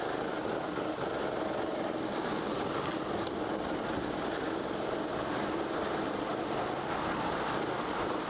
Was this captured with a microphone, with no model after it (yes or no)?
yes